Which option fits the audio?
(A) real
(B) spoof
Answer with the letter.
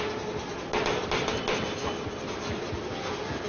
A